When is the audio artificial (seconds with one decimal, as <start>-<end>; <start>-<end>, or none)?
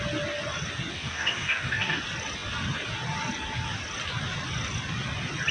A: 0.9-2.0